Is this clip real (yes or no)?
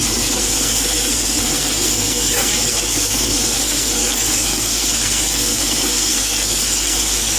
no